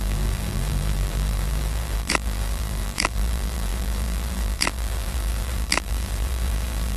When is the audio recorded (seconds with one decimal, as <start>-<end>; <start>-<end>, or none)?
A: none